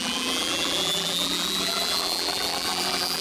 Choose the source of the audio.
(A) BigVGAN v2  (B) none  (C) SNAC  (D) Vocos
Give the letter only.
A